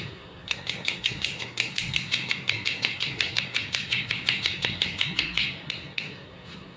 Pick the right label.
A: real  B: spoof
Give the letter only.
B